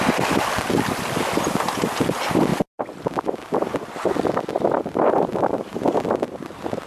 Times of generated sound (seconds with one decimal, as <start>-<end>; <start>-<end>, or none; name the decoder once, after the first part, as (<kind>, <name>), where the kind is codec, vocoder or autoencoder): none